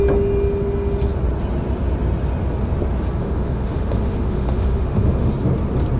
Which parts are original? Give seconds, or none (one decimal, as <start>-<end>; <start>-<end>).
0.0-3.2; 5.3-6.0